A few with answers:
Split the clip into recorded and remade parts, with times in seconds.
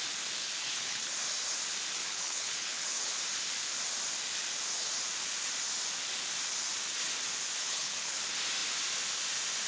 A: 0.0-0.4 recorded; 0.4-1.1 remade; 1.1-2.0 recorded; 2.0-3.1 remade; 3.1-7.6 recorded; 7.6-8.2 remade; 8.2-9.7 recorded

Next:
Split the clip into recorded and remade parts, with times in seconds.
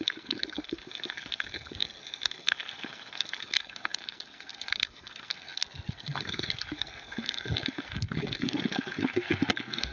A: 0.0-9.9 remade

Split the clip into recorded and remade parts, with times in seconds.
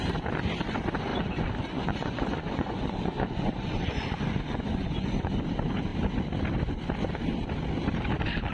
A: 0.0-1.1 recorded; 1.1-5.3 remade; 5.3-8.5 recorded